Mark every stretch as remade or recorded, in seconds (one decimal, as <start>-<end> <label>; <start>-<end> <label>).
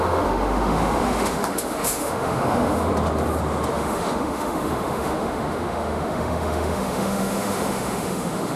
0.0-2.9 remade; 2.9-3.7 recorded; 3.7-8.6 remade